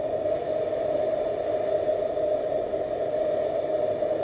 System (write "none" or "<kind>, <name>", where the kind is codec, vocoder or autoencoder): none